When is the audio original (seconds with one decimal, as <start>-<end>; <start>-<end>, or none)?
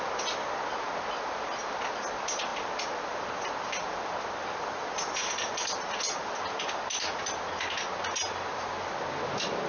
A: 0.0-9.7